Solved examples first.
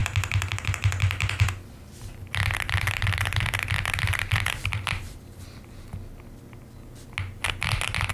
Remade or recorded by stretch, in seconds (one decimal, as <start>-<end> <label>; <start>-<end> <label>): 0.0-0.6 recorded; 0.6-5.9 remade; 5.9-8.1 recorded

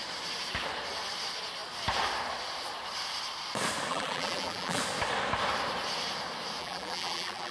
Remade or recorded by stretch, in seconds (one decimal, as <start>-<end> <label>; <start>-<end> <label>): 0.0-3.9 recorded; 3.9-4.8 remade; 4.8-6.6 recorded; 6.6-7.5 remade

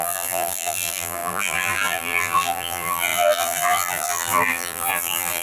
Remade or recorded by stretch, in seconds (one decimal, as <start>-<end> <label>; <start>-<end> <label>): 0.0-5.4 remade

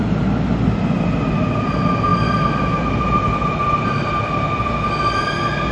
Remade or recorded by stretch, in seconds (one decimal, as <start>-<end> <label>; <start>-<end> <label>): 0.0-5.7 recorded

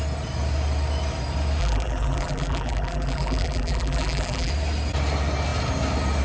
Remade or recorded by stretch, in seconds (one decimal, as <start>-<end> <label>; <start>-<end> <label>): 0.0-1.6 recorded; 1.6-4.5 remade; 4.5-6.2 recorded

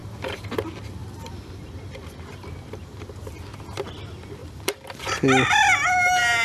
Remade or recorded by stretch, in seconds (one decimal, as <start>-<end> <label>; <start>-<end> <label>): 0.0-0.5 remade; 0.5-1.0 recorded; 1.0-1.7 remade; 1.7-2.4 recorded; 2.4-3.4 remade; 3.4-4.4 recorded; 4.4-5.0 remade; 5.0-6.4 recorded

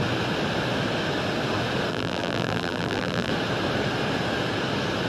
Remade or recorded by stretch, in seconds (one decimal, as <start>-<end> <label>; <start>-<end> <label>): 0.0-1.9 recorded; 1.9-3.3 remade; 3.3-5.1 recorded